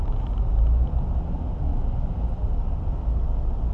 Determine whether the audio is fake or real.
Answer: real